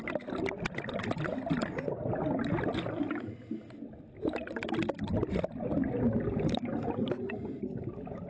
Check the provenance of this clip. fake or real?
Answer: real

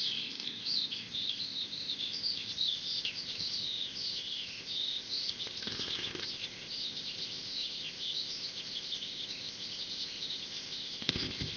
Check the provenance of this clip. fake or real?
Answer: fake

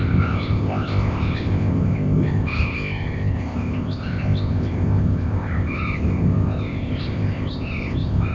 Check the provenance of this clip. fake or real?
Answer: fake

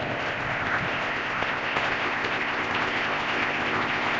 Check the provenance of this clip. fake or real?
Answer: fake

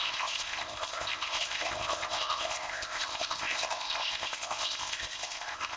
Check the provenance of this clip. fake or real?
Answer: fake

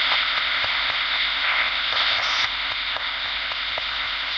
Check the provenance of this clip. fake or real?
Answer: fake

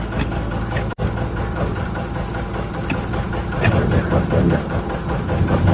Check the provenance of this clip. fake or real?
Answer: real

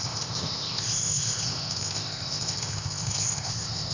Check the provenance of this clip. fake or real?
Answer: fake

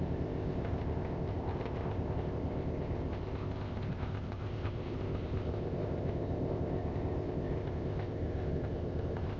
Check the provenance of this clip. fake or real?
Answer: fake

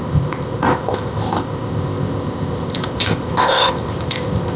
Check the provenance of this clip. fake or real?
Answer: fake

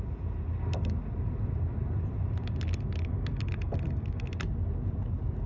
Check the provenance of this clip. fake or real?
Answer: real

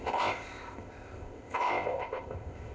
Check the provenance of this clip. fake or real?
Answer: fake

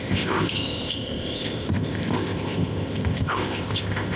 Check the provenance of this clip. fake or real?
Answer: fake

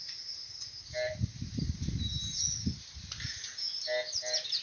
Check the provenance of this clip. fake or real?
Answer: real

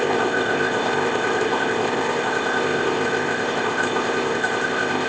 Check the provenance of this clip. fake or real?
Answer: fake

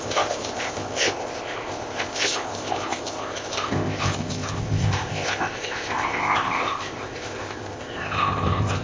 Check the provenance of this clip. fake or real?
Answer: fake